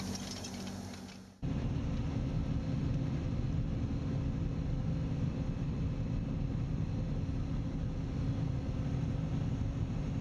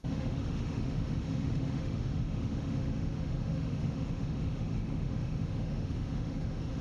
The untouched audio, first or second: first